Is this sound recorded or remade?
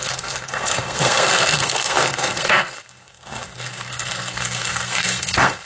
remade